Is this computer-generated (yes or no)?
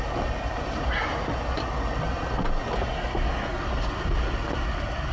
no